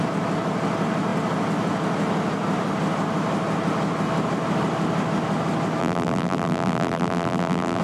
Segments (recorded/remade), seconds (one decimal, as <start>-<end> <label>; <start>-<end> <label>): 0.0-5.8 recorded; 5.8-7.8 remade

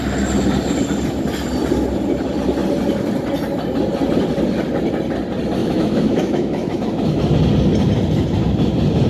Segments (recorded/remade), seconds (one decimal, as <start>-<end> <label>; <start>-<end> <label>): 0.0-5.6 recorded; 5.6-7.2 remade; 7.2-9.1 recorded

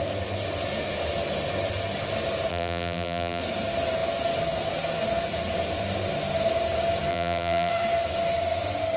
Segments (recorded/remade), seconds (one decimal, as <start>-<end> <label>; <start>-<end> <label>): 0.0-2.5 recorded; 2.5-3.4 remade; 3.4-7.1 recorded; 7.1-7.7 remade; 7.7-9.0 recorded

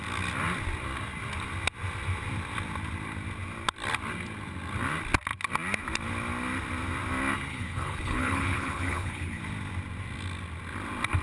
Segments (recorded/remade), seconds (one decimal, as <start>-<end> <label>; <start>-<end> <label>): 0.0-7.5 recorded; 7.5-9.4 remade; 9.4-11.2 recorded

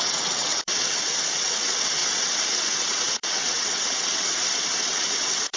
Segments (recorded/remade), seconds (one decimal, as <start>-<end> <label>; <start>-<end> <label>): 0.0-5.6 remade

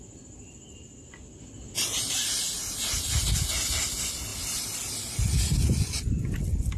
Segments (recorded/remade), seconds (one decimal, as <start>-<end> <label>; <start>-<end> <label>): 0.0-6.8 recorded

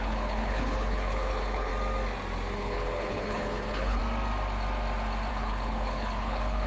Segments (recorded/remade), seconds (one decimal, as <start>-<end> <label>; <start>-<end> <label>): 0.0-1.7 remade; 1.7-2.5 recorded; 2.5-4.0 remade; 4.0-5.3 recorded; 5.3-6.7 remade